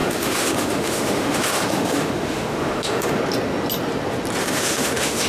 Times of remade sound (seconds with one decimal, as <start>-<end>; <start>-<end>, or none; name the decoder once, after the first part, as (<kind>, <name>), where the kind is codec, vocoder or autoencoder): 0.0-3.2 (autoencoder, DAC-VAE); 4.4-5.3